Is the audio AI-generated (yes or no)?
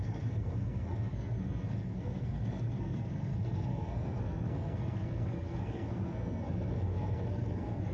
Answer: yes